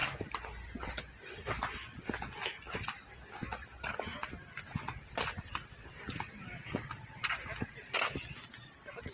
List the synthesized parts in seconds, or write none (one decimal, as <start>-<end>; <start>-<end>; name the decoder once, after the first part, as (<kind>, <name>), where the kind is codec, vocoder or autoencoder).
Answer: none